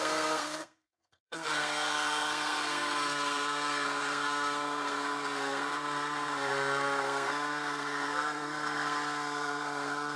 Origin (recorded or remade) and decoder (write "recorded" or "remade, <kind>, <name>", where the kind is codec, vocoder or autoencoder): remade, codec, SNAC